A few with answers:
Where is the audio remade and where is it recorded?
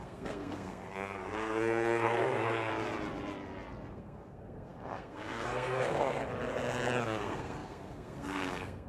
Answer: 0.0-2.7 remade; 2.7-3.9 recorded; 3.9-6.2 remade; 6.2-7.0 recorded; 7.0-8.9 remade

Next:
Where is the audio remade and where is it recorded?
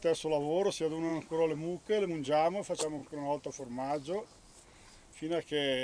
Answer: 0.0-5.8 recorded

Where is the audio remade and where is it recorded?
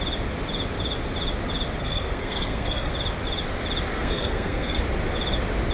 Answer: 0.0-1.8 recorded; 1.8-2.9 remade; 2.9-3.9 recorded; 3.9-4.8 remade; 4.8-5.7 recorded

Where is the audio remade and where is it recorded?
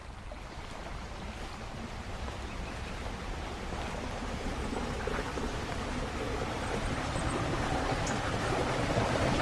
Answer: 0.0-9.4 recorded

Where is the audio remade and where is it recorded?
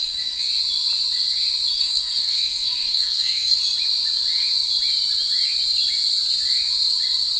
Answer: 0.0-0.5 remade; 0.5-1.7 recorded; 1.7-3.6 remade; 3.6-7.4 recorded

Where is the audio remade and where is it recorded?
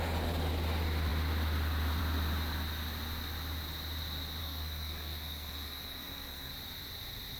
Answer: 0.0-4.4 recorded; 4.4-6.5 remade; 6.5-7.4 recorded